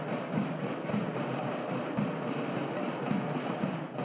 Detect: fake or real real